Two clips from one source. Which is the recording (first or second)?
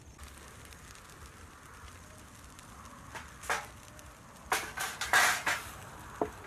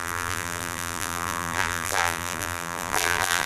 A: first